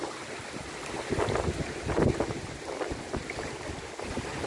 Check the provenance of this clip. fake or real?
real